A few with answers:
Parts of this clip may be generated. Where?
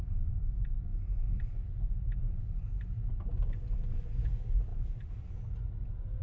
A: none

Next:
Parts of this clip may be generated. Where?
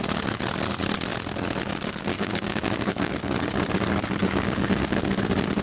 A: 2.1-3.1 (codec, DAC); 4.2-5.0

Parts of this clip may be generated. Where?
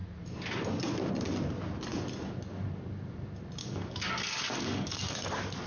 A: 3.6-5.1 (codec, DAC)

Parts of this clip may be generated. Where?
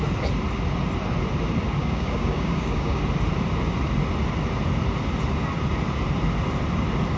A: 1.8-3.0 (codec, DAC)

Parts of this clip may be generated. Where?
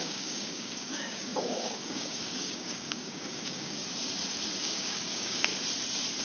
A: 0.0-3.8 (codec, DAC); 4.6-5.5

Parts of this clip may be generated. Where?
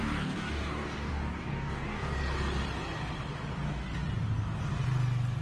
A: 0.0-2.1 (codec, DAC)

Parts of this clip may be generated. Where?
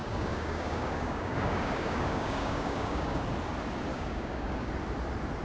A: 0.0-3.2 (codec, DAC); 3.9-4.7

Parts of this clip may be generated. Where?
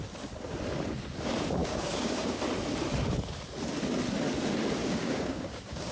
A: 1.6-2.4 (codec, DAC); 4.8-5.9